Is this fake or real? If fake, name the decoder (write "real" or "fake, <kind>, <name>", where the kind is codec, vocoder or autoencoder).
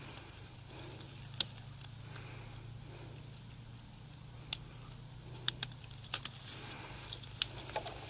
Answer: real